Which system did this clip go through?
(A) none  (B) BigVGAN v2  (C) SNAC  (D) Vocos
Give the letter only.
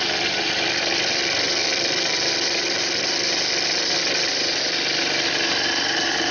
A